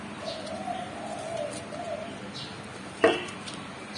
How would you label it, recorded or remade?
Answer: recorded